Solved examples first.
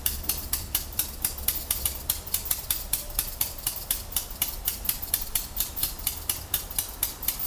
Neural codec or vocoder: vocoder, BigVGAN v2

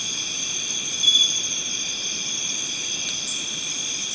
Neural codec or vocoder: none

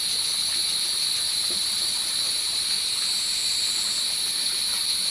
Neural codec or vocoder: none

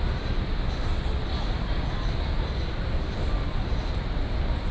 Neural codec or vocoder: none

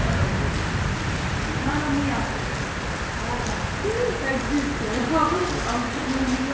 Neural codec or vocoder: none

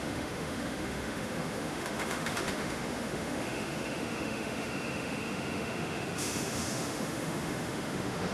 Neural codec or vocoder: autoencoder, DAC-VAE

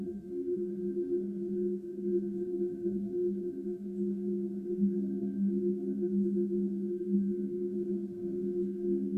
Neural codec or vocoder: codec, SNAC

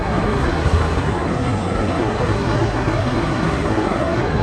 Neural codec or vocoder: codec, SNAC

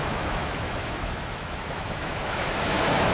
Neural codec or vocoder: autoencoder, DAC-VAE